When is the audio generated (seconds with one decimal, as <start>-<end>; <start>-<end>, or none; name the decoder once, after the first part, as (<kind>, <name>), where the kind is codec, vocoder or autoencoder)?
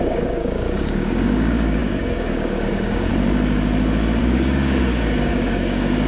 0.0-3.1 (codec, DAC); 4.2-6.1